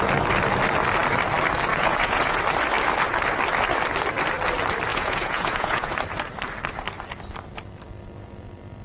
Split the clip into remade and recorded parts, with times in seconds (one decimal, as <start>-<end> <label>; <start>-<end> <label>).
0.0-1.7 recorded; 1.7-2.4 remade; 2.4-4.9 recorded; 4.9-5.9 remade; 5.9-8.8 recorded